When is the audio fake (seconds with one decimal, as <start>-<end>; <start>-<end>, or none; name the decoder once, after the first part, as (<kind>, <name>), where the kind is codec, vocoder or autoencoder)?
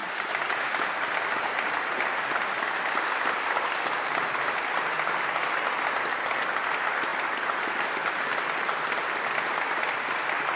7.1-8.9 (vocoder, BigVGAN v2)